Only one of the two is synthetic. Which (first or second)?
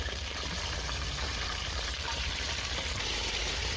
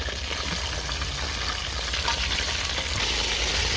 first